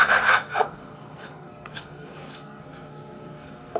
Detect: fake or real fake